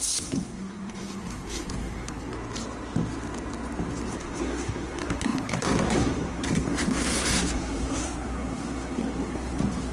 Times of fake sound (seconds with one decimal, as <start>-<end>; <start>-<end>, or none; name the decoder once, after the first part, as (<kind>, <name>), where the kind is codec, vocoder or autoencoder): 0.0-2.3 (codec, SNAC); 4.1-9.9